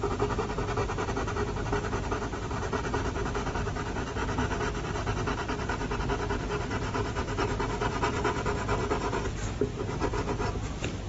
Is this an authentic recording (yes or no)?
yes